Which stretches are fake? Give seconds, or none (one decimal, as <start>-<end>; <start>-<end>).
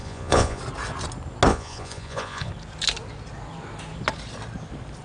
0.0-0.6; 1.5-2.5